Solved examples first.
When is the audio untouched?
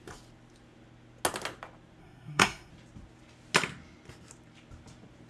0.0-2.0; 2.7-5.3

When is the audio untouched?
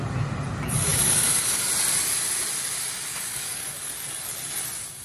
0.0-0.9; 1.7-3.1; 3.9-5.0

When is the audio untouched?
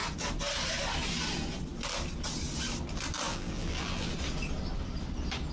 0.0-3.3; 4.1-5.5